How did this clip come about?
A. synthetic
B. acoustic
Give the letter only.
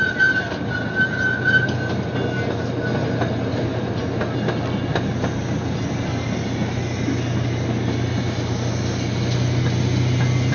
B